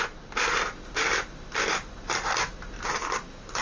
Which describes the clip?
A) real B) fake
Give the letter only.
A